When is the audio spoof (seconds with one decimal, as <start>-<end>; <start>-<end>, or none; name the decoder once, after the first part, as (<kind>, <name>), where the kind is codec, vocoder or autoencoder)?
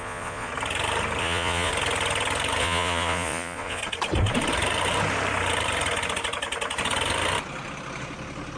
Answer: 0.0-0.5 (vocoder, Vocos); 1.2-1.7; 2.6-3.8